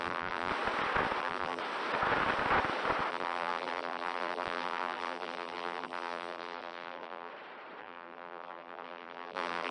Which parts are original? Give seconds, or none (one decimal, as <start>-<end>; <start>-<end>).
0.5-1.2; 1.6-3.1; 7.3-7.8